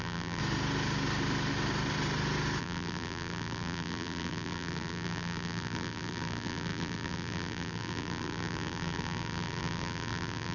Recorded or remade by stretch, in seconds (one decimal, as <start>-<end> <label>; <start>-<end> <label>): 0.0-0.4 remade; 0.4-2.6 recorded; 2.6-10.5 remade

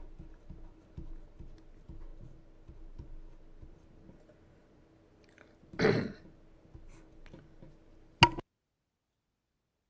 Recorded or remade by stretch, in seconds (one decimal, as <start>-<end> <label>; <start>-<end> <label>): 0.0-9.9 recorded

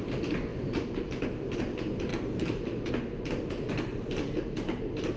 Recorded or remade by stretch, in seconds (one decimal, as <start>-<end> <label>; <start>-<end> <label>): 0.0-0.5 recorded; 0.5-1.1 remade; 1.1-2.1 recorded; 2.1-2.9 remade; 2.9-3.9 recorded; 3.9-4.8 remade; 4.8-5.2 recorded

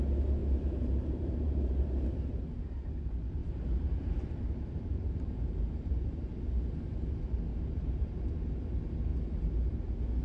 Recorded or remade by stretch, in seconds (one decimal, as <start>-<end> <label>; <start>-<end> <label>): 0.0-0.4 recorded; 0.4-2.4 remade; 2.4-3.4 recorded; 3.4-6.3 remade; 6.3-7.5 recorded; 7.5-8.2 remade; 8.2-10.2 recorded

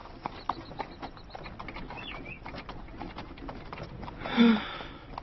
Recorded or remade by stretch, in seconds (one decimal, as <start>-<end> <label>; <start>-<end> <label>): 0.0-5.2 recorded

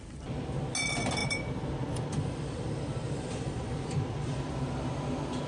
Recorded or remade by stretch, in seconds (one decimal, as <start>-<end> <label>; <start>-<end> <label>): 0.0-1.2 recorded; 1.2-4.5 remade; 4.5-5.5 recorded

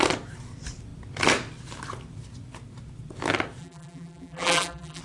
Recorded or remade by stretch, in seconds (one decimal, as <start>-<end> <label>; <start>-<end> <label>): 0.0-3.6 recorded; 3.6-5.0 remade

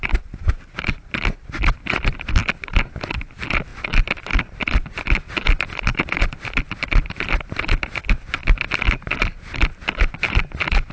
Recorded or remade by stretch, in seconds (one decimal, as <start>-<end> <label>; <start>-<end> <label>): 0.0-10.9 remade